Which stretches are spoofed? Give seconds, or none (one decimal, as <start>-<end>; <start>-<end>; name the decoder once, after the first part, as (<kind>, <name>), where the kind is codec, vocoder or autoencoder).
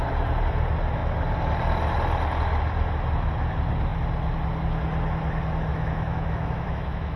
5.7-7.2 (autoencoder, DAC-VAE)